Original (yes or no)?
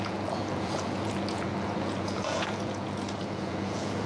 no